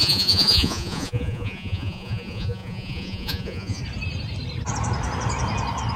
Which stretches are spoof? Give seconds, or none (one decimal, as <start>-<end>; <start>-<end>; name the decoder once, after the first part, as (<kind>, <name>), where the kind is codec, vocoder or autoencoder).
0.0-3.8 (vocoder, Vocos)